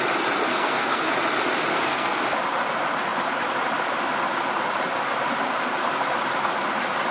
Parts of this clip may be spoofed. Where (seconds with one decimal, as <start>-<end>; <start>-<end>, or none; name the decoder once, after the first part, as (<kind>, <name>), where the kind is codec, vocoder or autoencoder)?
0.5-1.1 (codec, SNAC); 1.7-2.2